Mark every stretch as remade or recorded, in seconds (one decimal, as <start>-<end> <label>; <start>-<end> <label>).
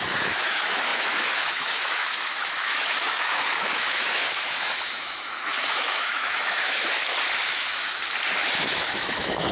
0.0-6.8 remade; 6.8-7.5 recorded; 7.5-7.9 remade; 7.9-8.6 recorded; 8.6-9.5 remade